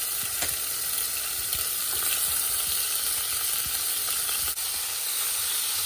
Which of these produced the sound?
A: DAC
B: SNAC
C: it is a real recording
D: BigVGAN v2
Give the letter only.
C